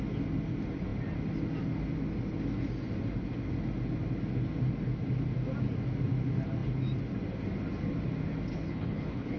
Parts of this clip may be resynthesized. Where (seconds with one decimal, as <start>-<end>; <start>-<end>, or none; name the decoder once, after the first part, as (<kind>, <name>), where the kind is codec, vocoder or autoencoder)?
8.5-9.4 (codec, HILCodec)